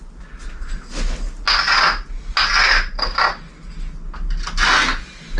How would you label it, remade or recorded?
recorded